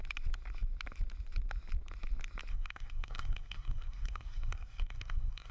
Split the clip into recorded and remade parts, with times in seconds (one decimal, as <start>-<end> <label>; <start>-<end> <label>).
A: 0.0-2.5 recorded; 2.5-5.5 remade